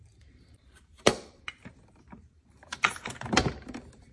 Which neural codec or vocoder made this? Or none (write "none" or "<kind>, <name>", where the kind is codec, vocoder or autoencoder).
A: vocoder, BigVGAN v2